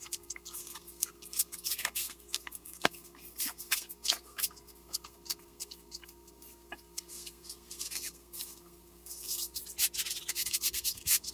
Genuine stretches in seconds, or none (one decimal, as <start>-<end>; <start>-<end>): 9.6-10.3